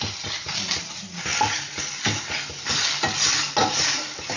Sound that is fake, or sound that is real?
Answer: real